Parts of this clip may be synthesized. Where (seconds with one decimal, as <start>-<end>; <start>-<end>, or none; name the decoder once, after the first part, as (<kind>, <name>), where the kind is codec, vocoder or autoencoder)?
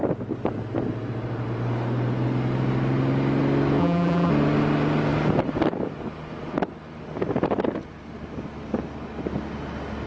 3.8-4.3 (vocoder, BigVGAN v2)